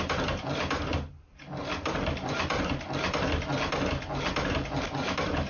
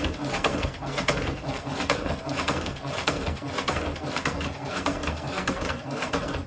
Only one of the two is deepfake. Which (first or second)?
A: second